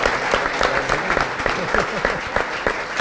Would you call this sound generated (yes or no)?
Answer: no